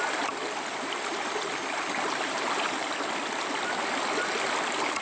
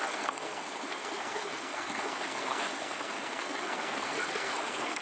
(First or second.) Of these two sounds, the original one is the first